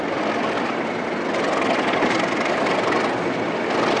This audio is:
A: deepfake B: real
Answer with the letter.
B